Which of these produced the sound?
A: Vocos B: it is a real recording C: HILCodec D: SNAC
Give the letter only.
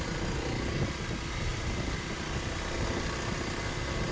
B